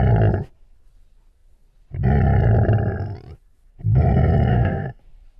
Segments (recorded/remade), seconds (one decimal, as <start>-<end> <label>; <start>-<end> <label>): 0.0-4.5 recorded; 4.5-5.0 remade; 5.0-5.4 recorded